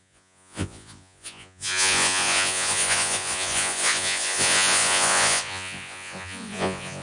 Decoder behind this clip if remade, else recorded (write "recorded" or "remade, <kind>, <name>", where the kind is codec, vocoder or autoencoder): remade, vocoder, Vocos